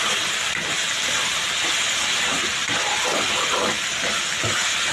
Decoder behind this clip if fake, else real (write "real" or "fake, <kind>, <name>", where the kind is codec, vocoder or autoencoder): fake, vocoder, BigVGAN v2